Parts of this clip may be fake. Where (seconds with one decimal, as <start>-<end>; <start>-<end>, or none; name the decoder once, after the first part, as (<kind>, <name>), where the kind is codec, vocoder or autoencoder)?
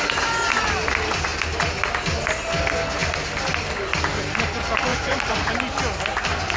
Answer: 4.9-5.5 (vocoder, Vocos)